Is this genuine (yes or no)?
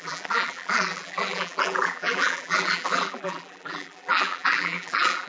no